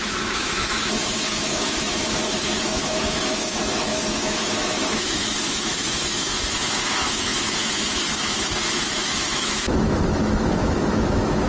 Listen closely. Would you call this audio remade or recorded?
remade